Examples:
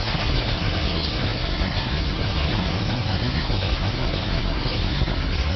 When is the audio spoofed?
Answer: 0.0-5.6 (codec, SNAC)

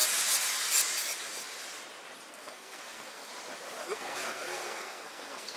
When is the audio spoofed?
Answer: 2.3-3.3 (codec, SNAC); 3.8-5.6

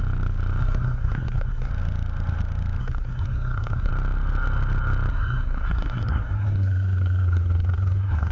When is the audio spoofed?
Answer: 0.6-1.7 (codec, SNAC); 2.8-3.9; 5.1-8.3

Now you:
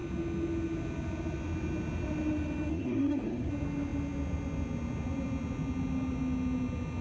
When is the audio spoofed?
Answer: 2.7-3.5 (codec, SNAC)

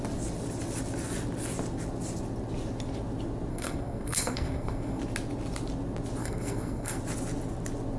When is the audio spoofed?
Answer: 3.5-5.0 (codec, SNAC); 6.2-7.0

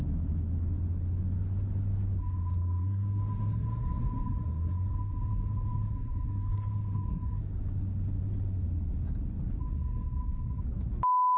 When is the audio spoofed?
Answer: 2.2-7.4 (codec, SNAC); 9.6-10.6

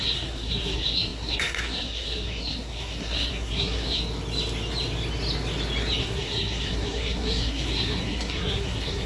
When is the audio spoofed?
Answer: 0.0-4.0 (codec, SNAC); 6.0-9.1